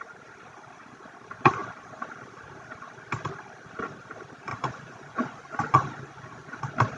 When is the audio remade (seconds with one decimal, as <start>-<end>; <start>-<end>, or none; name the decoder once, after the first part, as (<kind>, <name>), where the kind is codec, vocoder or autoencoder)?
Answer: 4.5-6.6 (vocoder, Vocos)